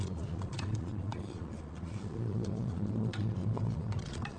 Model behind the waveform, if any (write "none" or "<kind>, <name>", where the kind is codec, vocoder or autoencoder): vocoder, Vocos